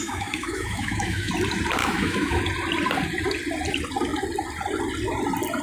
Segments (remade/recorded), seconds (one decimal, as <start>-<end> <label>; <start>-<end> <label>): 0.0-1.3 remade; 1.3-1.8 recorded; 1.8-2.4 remade; 2.4-5.6 recorded

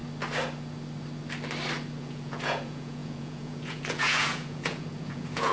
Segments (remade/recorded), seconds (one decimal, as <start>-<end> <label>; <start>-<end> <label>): 0.0-2.0 recorded; 2.0-5.5 remade

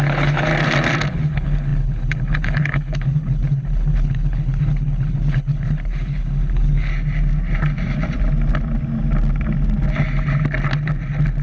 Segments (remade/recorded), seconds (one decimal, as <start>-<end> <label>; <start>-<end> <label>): 0.0-0.5 remade; 0.5-1.1 recorded; 1.1-6.9 remade; 6.9-11.4 recorded

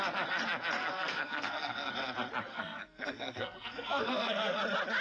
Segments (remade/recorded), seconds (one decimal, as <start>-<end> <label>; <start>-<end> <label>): 0.0-0.8 recorded; 0.8-1.9 remade; 1.9-2.5 recorded; 2.5-4.6 remade; 4.6-5.0 recorded

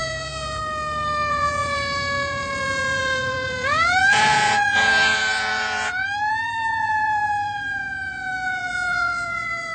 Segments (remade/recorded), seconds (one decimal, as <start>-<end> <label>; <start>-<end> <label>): 0.0-0.6 remade; 0.6-1.3 recorded; 1.3-9.7 remade

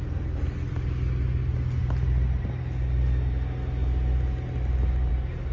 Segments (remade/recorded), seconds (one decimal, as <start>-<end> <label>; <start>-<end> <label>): 0.0-5.5 recorded

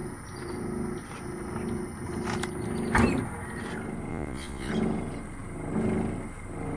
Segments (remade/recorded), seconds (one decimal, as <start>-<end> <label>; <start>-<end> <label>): 0.0-4.1 recorded; 4.1-4.7 remade; 4.7-6.8 recorded